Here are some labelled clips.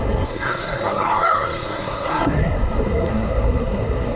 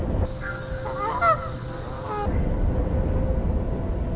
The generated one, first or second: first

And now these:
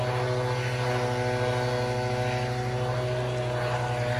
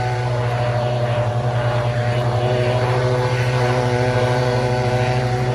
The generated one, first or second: second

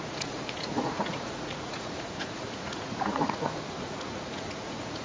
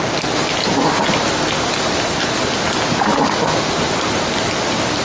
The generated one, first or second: first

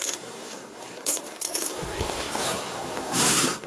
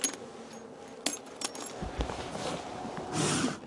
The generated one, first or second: first